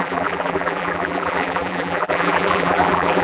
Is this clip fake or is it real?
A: fake